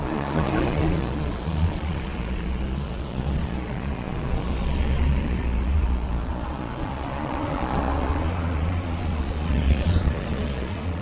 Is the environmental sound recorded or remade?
remade